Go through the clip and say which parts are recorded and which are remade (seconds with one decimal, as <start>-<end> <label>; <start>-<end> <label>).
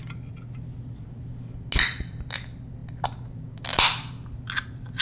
0.0-5.0 recorded